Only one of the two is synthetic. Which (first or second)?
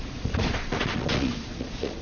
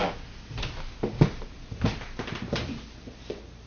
first